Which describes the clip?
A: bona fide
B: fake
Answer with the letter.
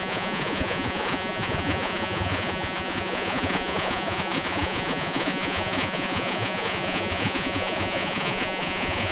B